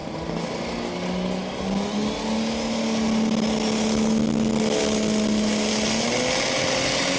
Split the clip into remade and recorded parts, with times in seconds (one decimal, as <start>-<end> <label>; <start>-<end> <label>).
0.0-7.2 recorded